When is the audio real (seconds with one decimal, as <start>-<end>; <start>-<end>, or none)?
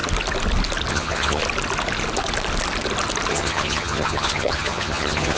0.0-0.9; 1.4-3.3